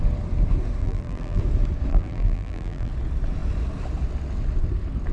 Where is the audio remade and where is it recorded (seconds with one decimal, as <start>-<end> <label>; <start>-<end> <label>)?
0.0-0.8 recorded; 0.8-1.4 remade; 1.4-1.9 recorded; 1.9-2.9 remade; 2.9-5.1 recorded